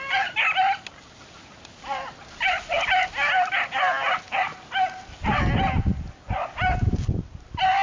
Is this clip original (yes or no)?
yes